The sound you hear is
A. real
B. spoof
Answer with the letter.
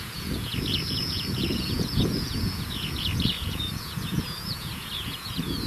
B